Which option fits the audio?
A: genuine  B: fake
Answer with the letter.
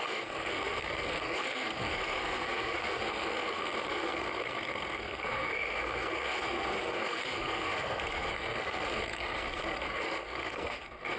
B